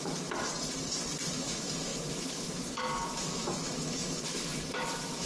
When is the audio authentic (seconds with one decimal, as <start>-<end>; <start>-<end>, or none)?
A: 0.5-1.3